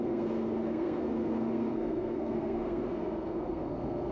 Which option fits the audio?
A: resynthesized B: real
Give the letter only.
A